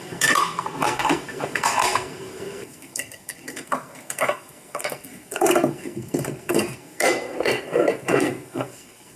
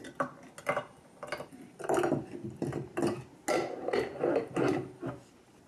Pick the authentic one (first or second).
second